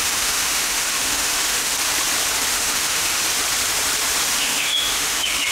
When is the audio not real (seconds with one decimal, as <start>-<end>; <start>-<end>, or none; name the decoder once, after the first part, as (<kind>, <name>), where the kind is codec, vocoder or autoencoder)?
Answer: 0.0-1.7 (autoencoder, DAC-VAE); 2.5-3.2; 4.3-5.5